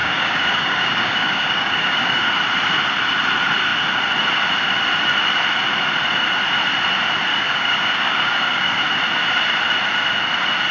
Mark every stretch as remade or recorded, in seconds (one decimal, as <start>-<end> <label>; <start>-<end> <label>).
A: 0.0-2.3 remade; 2.3-7.3 recorded; 7.3-8.8 remade; 8.8-10.7 recorded